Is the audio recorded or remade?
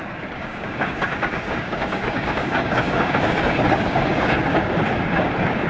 remade